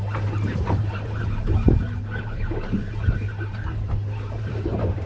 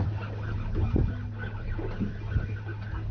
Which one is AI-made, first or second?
first